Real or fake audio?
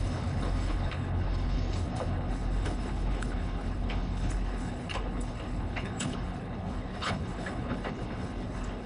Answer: fake